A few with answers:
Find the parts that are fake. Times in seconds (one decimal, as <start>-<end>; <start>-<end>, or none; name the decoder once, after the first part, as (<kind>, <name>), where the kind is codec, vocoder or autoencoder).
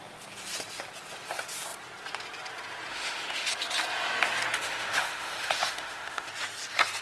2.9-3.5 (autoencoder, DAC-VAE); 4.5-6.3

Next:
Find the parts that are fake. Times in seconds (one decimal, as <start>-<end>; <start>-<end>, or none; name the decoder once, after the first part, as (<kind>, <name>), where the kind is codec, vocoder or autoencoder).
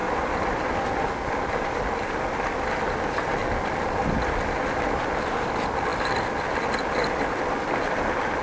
0.0-2.2 (vocoder, BigVGAN v2); 5.9-7.2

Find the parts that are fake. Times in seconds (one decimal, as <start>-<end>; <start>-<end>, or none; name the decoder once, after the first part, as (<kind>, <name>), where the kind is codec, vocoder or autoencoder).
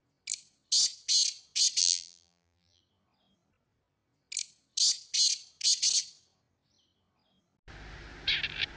1.8-2.8 (vocoder, BigVGAN v2)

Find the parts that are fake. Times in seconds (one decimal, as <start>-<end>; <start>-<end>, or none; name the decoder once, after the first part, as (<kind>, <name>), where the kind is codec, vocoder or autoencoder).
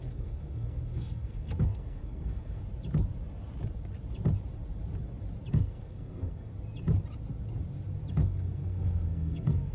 0.0-2.6 (codec, SNAC); 5.5-6.5; 8.1-9.7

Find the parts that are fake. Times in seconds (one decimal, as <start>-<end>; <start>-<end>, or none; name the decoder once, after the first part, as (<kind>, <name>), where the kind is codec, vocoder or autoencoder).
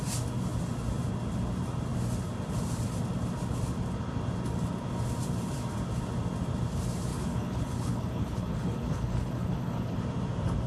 7.1-10.0 (codec, HILCodec)